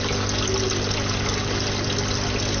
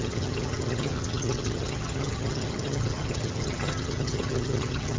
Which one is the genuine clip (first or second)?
first